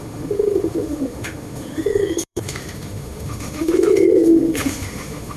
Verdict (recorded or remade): remade